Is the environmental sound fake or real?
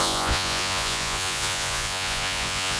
fake